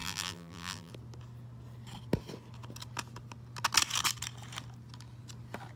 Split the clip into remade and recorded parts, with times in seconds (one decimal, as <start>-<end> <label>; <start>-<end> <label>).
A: 0.0-0.9 remade; 0.9-5.8 recorded